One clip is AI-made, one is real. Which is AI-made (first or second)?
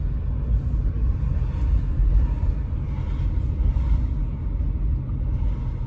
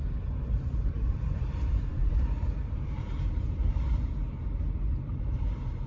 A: second